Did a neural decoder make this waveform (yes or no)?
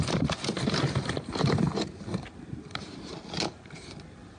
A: yes